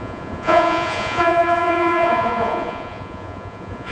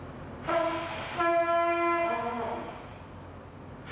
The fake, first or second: first